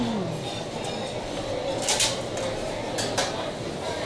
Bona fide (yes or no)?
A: yes